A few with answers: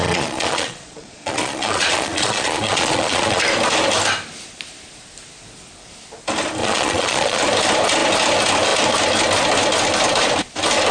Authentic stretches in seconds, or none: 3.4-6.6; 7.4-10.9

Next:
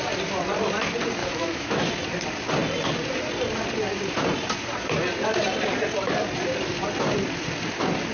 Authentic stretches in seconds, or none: 0.0-1.2; 1.9-8.1

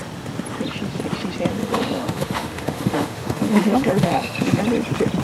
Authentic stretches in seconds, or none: 0.0-1.5; 4.6-5.2

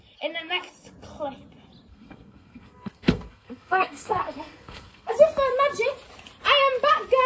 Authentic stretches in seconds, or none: 0.0-1.9; 5.1-7.3

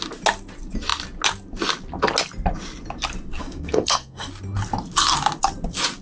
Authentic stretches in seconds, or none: 0.0-3.4; 4.3-6.0

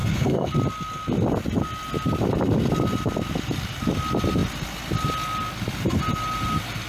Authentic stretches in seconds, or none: 0.5-6.9

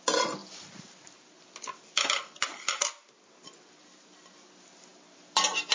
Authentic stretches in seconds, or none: 0.0-5.7